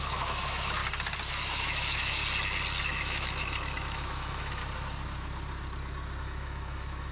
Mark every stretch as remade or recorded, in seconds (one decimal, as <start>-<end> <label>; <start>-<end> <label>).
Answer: 0.0-0.8 remade; 0.8-1.3 recorded; 1.3-2.2 remade; 2.2-2.8 recorded; 2.8-4.6 remade; 4.6-6.2 recorded; 6.2-7.1 remade